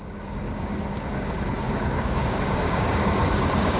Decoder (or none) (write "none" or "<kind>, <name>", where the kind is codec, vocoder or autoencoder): codec, DAC